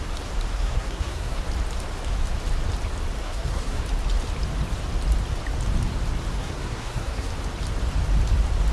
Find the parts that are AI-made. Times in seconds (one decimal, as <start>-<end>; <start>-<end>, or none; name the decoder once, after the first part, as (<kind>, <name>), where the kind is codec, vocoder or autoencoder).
0.5-1.4 (codec, SNAC); 3.2-3.8; 6.3-7.3